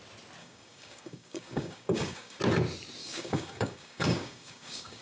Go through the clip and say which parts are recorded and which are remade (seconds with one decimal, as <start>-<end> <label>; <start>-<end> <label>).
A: 0.0-0.4 recorded; 0.4-2.4 remade; 2.4-3.0 recorded; 3.0-5.0 remade